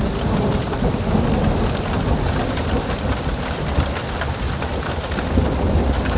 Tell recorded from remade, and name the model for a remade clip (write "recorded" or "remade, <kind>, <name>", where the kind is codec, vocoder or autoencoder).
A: recorded